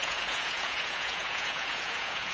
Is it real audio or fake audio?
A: fake